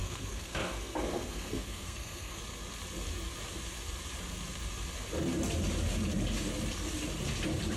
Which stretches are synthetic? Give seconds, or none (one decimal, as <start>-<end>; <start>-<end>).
0.0-2.4